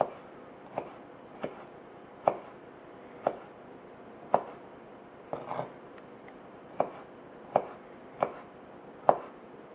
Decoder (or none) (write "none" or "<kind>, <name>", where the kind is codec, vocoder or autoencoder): none